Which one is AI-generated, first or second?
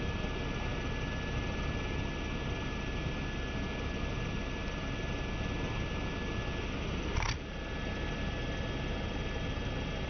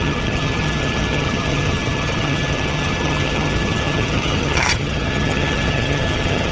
second